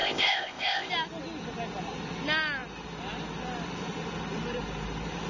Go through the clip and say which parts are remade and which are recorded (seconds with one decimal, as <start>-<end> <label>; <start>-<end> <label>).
0.0-0.9 remade; 0.9-5.3 recorded

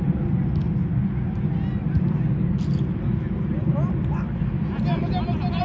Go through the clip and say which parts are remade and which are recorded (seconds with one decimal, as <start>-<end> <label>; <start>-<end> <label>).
0.0-5.6 recorded